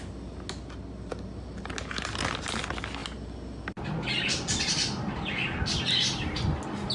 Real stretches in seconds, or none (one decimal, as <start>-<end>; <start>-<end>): 0.0-6.9